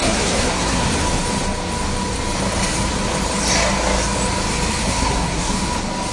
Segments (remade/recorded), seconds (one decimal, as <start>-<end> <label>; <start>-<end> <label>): 0.0-0.9 remade; 0.9-4.8 recorded; 4.8-5.5 remade; 5.5-6.1 recorded